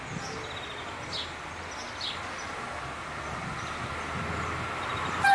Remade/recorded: recorded